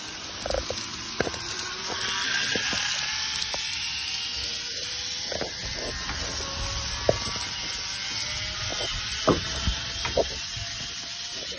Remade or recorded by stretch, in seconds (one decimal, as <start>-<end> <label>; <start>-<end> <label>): 0.0-0.9 recorded; 0.9-2.0 remade; 2.0-11.6 recorded